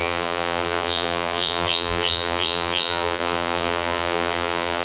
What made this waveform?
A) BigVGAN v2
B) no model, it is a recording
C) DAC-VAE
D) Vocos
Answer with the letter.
A